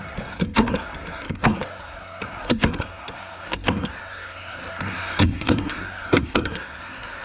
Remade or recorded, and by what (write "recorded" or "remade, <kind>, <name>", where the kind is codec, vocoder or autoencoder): remade, codec, SNAC